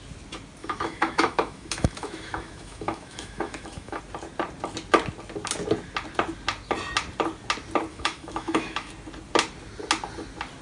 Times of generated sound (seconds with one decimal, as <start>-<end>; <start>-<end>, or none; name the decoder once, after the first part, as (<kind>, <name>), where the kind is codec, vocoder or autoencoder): 0.6-4.0 (autoencoder, DAC-VAE); 7.9-8.9